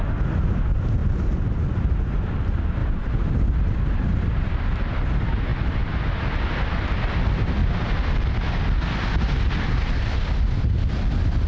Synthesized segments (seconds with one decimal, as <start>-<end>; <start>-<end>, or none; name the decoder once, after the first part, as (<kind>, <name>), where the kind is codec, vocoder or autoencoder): 1.0-1.6 (vocoder, BigVGAN v2); 2.8-3.4